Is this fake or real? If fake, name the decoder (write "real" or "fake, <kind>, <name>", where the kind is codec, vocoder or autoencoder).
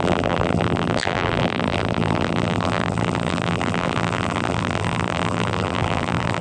fake, vocoder, BigVGAN v2